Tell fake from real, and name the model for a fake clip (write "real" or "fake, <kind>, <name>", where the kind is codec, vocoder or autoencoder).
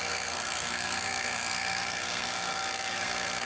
fake, codec, SNAC